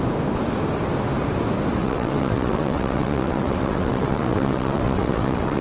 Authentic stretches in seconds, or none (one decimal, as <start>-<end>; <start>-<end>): 0.0-1.8